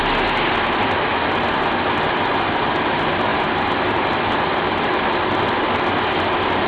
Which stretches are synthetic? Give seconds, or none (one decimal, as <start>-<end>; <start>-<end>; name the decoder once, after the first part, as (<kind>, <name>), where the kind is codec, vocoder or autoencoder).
none